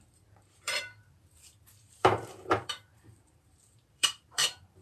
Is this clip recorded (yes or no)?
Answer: no